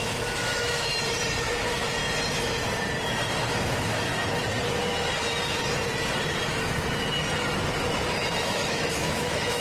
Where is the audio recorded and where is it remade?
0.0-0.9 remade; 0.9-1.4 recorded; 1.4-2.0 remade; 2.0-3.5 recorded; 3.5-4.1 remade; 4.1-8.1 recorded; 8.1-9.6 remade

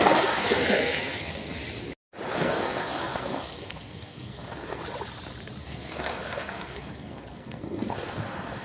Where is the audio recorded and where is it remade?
0.0-1.6 remade; 1.6-2.3 recorded; 2.3-4.8 remade; 4.8-5.6 recorded; 5.6-8.6 remade

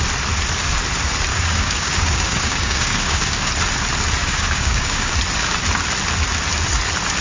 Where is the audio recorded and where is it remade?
0.0-1.3 recorded; 1.3-3.5 remade; 3.5-4.2 recorded; 4.2-5.1 remade; 5.1-7.2 recorded

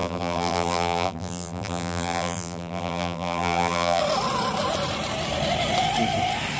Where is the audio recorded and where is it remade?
0.0-4.0 remade; 4.0-6.6 recorded

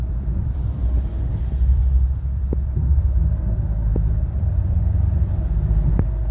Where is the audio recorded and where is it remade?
0.0-0.8 remade; 0.8-1.4 recorded; 1.4-1.8 remade; 1.8-3.2 recorded; 3.2-3.8 remade; 3.8-4.3 recorded; 4.3-6.3 remade

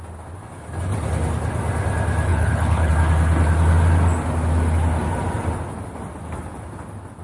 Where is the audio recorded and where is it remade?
0.0-2.3 recorded; 2.3-2.9 remade; 2.9-7.2 recorded

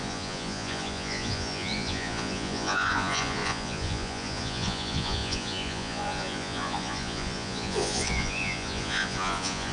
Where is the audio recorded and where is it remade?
0.0-9.7 remade

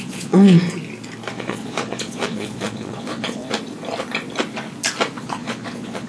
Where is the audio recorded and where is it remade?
0.0-0.6 remade; 0.6-1.3 recorded; 1.3-3.4 remade; 3.4-5.2 recorded; 5.2-6.1 remade